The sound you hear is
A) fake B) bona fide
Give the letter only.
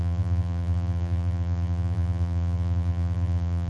A